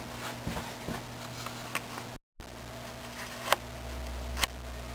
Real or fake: real